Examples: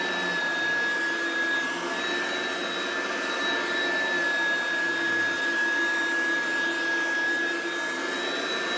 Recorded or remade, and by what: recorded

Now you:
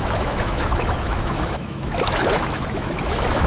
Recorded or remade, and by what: remade, autoencoder, DAC-VAE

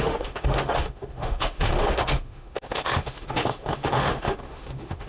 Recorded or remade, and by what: remade, autoencoder, DAC-VAE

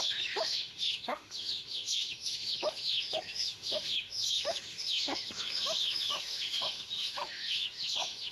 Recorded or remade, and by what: remade, autoencoder, DAC-VAE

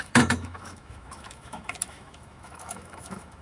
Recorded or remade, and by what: remade, autoencoder, DAC-VAE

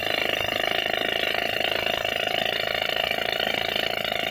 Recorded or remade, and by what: recorded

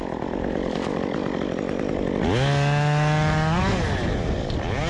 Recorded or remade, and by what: recorded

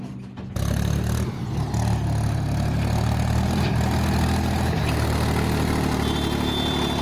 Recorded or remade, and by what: recorded